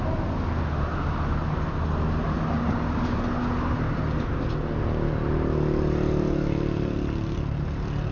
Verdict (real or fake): real